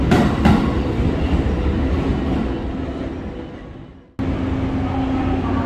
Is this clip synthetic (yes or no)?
no